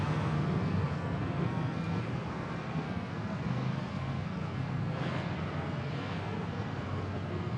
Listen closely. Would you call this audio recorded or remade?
remade